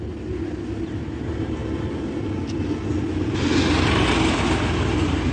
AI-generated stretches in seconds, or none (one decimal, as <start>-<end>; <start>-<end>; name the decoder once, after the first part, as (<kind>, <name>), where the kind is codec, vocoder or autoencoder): none